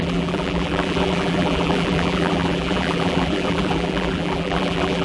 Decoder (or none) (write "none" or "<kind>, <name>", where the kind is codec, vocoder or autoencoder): vocoder, BigVGAN v2